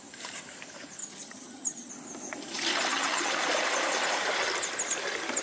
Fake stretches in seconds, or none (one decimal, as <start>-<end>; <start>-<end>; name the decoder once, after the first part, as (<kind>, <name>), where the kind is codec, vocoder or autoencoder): 1.0-1.9 (vocoder, HiFi-GAN); 2.9-3.4